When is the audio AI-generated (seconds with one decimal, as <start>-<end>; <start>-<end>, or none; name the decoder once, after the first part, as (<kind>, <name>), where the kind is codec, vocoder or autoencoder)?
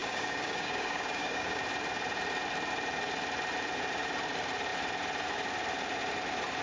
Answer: 0.0-1.6 (codec, DAC)